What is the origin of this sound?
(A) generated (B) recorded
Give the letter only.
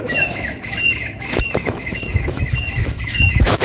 A